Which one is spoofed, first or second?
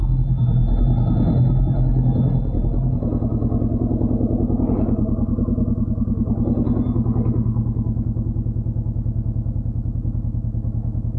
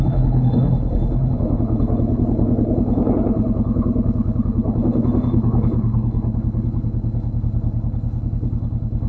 second